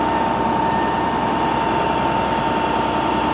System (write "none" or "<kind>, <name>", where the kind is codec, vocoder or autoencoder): vocoder, BigVGAN v2